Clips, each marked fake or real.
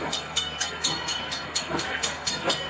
fake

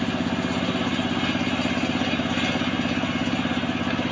real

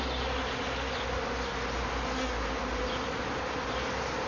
real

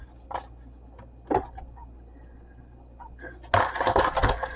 real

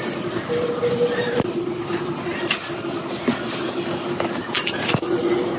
real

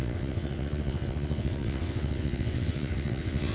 fake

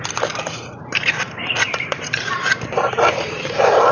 fake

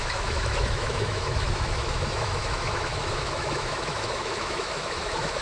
fake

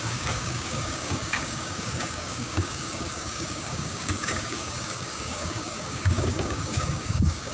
fake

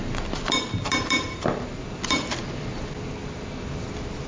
real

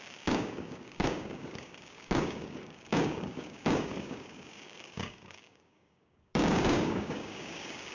fake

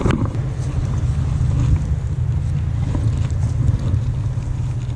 real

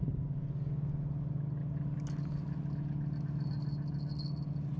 real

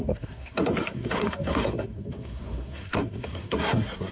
fake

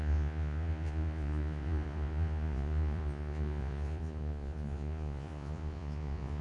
fake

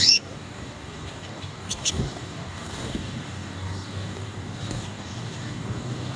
fake